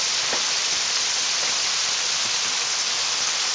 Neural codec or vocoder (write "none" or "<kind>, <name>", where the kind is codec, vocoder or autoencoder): none